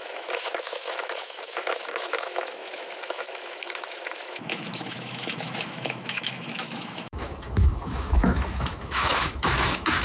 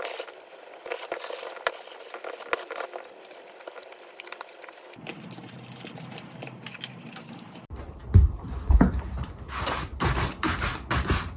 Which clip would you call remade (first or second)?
first